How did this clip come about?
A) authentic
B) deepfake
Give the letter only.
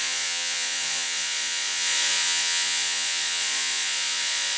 B